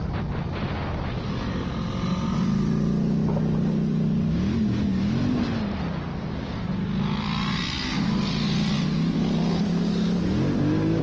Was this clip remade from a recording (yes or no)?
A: no